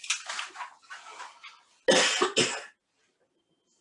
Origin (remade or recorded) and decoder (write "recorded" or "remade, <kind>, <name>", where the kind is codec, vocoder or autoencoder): recorded